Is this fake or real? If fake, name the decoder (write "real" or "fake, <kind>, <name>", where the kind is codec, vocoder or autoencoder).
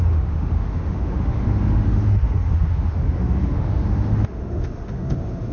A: fake, autoencoder, DAC-VAE